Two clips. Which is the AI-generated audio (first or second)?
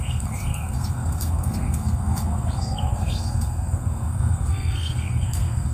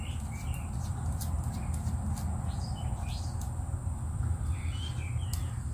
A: first